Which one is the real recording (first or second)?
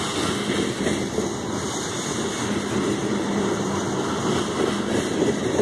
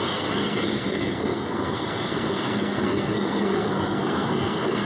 first